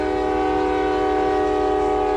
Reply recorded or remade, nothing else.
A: recorded